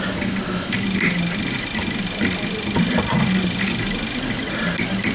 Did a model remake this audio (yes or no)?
no